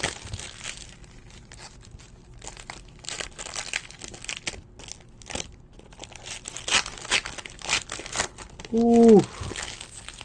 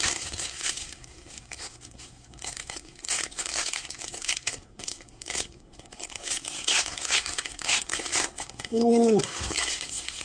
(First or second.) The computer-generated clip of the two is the second